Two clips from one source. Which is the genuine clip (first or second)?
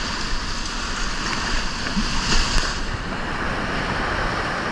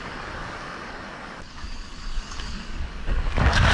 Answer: first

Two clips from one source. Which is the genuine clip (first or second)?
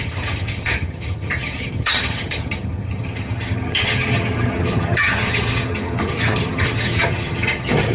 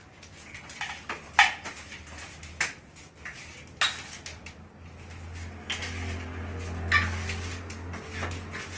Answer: second